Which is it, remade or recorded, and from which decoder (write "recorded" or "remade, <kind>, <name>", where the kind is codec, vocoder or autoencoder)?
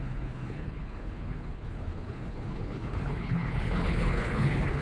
remade, codec, HILCodec